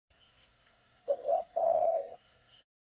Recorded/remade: remade